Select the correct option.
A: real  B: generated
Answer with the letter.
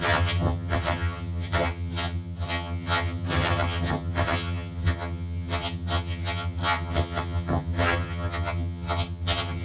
B